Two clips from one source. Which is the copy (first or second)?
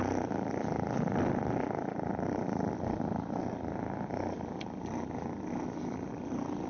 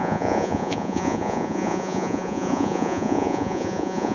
second